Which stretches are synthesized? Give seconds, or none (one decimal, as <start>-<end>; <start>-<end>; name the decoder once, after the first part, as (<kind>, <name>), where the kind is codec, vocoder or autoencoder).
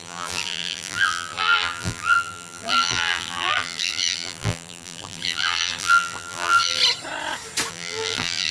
0.0-6.8 (vocoder, BigVGAN v2); 7.7-8.5